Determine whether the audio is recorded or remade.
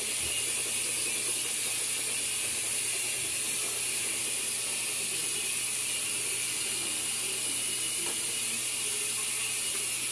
recorded